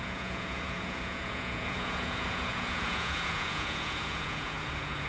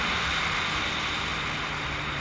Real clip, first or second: second